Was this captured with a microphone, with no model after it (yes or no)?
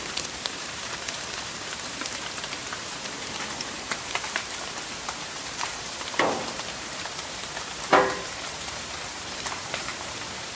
no